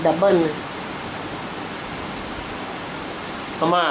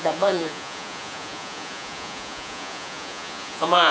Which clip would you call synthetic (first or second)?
second